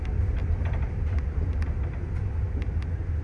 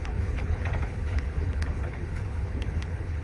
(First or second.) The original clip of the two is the first